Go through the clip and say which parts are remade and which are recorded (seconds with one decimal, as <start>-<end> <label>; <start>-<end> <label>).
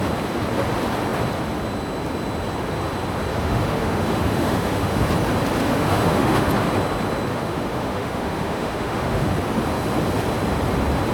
0.0-3.3 recorded; 3.3-5.1 remade; 5.1-5.6 recorded; 5.6-6.5 remade; 6.5-7.3 recorded; 7.3-9.3 remade; 9.3-11.1 recorded